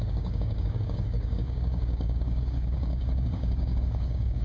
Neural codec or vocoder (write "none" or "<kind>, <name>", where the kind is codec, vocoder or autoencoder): codec, DAC